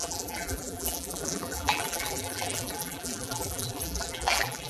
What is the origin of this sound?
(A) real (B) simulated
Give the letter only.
B